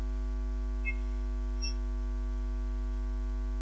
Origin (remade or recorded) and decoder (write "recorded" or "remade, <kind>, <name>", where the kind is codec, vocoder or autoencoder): recorded